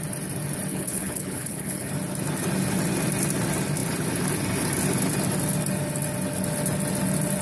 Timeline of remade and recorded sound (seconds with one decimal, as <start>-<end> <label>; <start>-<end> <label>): 0.0-0.7 recorded; 0.7-1.9 remade; 1.9-7.4 recorded

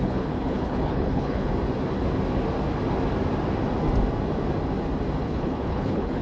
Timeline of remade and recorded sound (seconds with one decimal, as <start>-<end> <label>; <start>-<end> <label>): 0.0-1.5 remade; 1.5-5.2 recorded; 5.2-6.2 remade

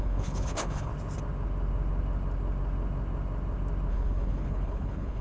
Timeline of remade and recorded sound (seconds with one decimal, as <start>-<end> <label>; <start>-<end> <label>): 0.0-0.9 remade; 0.9-3.9 recorded; 3.9-5.2 remade

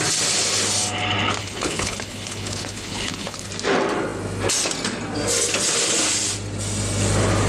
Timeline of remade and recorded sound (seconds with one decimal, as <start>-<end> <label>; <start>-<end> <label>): 0.0-1.4 recorded; 1.4-3.5 remade; 3.5-7.5 recorded

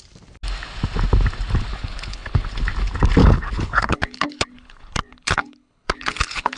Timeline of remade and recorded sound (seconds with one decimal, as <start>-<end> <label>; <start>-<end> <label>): 0.0-1.7 recorded; 1.7-2.5 remade; 2.5-3.2 recorded; 3.2-6.6 remade